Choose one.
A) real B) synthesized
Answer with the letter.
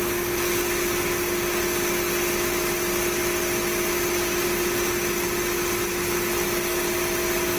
A